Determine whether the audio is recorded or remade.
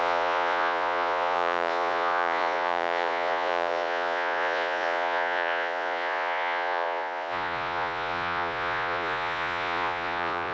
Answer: remade